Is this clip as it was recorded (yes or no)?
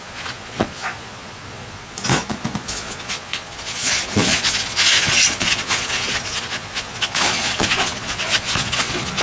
no